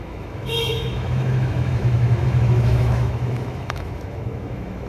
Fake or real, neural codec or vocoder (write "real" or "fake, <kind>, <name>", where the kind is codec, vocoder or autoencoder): fake, autoencoder, DAC-VAE